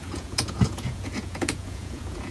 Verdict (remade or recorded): remade